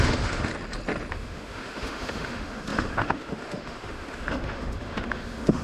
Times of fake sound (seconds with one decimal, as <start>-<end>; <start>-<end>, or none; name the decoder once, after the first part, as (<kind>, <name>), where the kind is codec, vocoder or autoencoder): 0.0-0.5 (autoencoder, DAC-VAE); 1.1-5.6